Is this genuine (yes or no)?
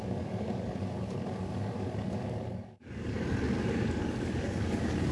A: no